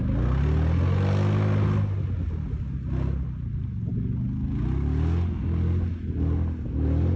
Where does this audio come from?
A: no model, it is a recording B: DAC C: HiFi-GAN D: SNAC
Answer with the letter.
A